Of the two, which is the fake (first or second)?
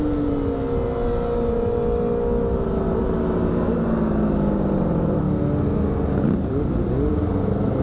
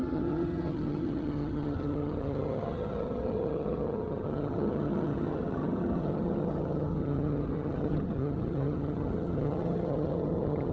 second